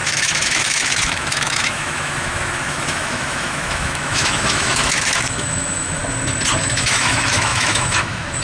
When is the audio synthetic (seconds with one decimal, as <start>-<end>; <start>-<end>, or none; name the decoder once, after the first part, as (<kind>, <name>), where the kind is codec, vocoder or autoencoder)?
0.0-6.0 (autoencoder, DAC-VAE); 6.6-8.4